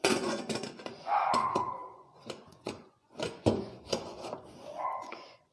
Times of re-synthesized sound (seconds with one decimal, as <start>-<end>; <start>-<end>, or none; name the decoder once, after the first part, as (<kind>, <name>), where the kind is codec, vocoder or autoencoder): 0.0-5.5 (vocoder, Vocos)